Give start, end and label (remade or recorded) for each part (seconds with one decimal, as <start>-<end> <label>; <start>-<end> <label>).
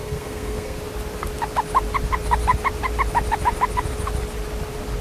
0.0-0.8 remade; 0.8-5.0 recorded